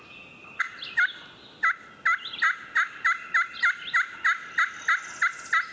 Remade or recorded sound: recorded